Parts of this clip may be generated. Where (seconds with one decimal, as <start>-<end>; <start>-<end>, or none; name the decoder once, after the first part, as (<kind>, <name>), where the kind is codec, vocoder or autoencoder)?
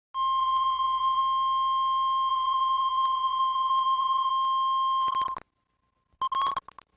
0.4-1.2 (vocoder, Vocos); 2.3-4.3